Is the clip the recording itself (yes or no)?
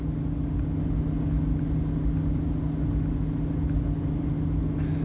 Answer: yes